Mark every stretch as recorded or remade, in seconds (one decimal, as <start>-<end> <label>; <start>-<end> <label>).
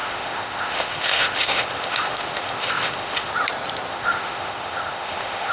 0.0-3.3 remade; 3.3-3.9 recorded; 3.9-5.5 remade